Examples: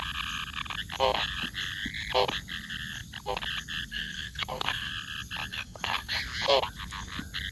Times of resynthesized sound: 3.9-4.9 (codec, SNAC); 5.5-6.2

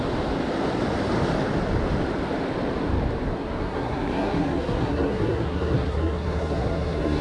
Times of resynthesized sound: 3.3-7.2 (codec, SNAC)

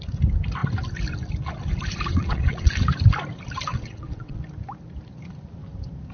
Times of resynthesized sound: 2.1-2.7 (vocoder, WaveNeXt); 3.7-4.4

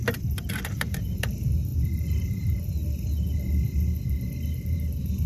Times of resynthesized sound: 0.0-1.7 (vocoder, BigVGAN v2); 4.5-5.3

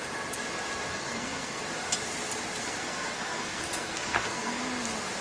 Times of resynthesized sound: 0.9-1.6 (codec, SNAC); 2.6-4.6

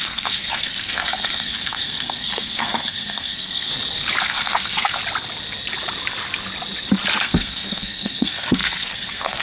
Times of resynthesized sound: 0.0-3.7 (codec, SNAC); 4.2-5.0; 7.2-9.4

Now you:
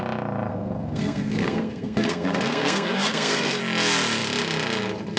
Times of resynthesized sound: 0.5-3.6 (codec, SNAC)

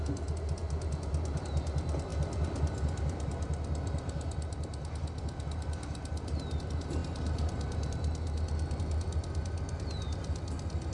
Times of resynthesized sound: none